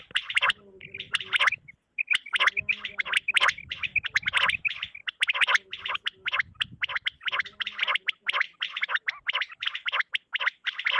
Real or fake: real